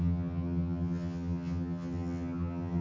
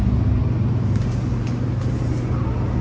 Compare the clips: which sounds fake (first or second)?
first